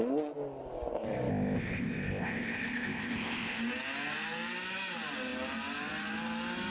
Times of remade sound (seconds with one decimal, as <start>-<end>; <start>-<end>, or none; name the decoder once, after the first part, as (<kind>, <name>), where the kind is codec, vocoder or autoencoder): 1.3-3.6 (codec, ZipCodec)